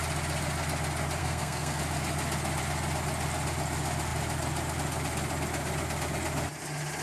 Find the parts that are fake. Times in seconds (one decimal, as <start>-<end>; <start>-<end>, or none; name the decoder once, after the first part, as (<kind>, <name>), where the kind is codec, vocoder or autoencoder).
1.2-1.8 (codec, SNAC)